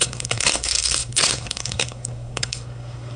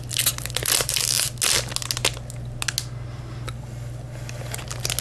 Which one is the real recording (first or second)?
second